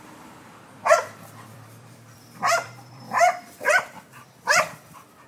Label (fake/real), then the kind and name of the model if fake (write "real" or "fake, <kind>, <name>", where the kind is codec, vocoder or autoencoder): fake, vocoder, BigVGAN v2